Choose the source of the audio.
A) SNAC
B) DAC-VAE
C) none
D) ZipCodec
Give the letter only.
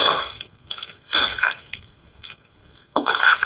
A